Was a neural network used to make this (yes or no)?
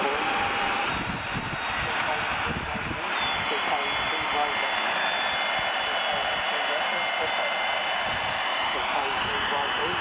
no